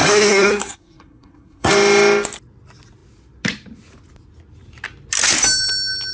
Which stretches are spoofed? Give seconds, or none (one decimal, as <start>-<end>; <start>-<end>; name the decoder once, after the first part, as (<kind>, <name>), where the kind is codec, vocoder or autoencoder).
0.0-1.7 (codec, SNAC)